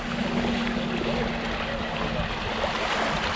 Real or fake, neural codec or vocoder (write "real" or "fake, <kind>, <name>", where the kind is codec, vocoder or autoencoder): real